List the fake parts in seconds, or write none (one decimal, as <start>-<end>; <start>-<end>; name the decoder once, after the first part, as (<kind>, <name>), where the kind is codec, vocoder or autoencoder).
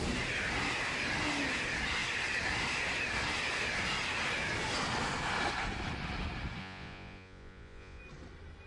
6.6-8.0 (vocoder, Vocos)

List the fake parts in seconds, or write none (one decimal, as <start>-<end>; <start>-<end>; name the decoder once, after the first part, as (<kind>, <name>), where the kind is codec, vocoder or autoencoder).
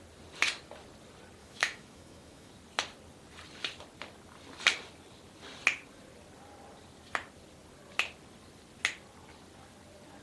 1.4-2.5 (autoencoder, DAC-VAE)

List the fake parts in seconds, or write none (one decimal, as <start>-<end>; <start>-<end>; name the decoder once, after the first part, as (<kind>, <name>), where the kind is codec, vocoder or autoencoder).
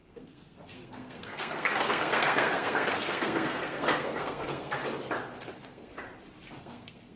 0.0-4.8 (codec, SNAC); 5.5-5.9; 6.6-7.2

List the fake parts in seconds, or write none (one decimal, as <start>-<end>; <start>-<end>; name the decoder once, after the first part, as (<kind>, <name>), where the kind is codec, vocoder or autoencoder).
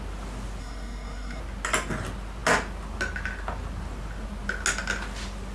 0.6-1.4 (codec, SNAC)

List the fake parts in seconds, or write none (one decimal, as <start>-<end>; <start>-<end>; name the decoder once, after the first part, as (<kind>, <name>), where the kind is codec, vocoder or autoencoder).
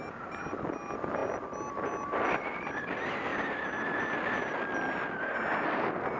none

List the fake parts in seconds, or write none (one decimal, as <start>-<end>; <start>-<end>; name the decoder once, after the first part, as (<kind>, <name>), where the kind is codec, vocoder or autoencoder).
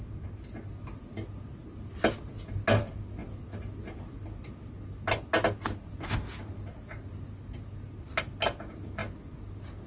none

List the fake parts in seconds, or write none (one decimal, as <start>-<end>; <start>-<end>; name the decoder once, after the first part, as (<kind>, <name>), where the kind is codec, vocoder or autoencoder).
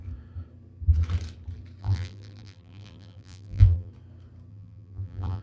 1.8-3.9 (vocoder, BigVGAN v2); 4.5-5.4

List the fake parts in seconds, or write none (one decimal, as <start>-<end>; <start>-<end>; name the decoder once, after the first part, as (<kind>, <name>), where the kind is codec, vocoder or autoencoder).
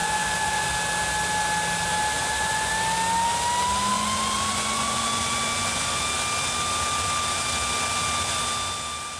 0.0-0.7 (vocoder, Vocos); 2.2-2.7; 3.9-6.0